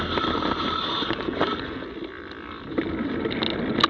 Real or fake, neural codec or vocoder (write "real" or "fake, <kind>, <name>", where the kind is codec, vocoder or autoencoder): real